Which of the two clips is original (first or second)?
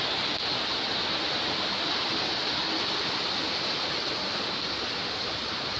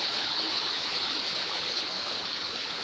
first